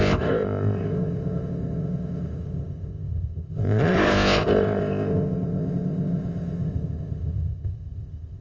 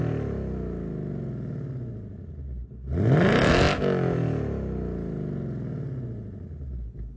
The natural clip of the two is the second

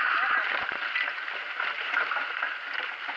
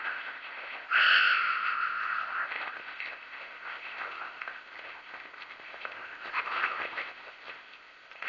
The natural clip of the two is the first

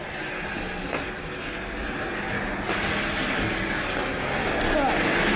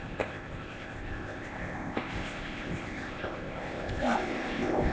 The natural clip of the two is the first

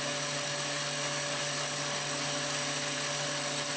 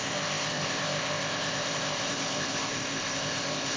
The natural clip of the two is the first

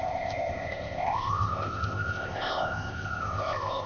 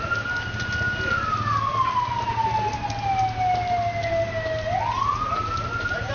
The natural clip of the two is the second